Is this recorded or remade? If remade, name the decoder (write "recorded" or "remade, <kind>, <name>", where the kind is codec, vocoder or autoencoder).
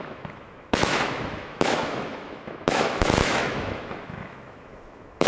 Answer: remade, autoencoder, DAC-VAE